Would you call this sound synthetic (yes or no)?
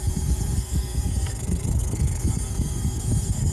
yes